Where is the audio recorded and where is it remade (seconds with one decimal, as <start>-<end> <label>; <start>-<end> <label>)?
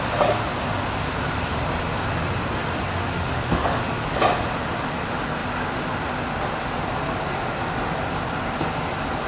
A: 0.0-3.0 recorded; 3.0-4.0 remade; 4.0-9.3 recorded